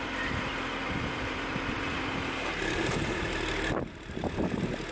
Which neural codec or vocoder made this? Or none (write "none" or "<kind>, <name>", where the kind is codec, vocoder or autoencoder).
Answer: vocoder, BigVGAN v2